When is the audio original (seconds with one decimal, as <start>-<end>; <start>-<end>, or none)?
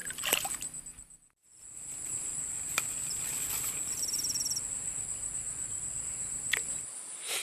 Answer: 0.0-7.4